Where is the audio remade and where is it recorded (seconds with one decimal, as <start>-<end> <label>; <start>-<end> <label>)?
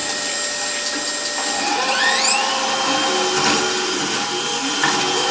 0.0-1.1 remade; 1.1-5.3 recorded